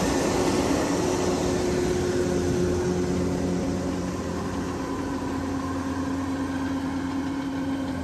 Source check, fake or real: real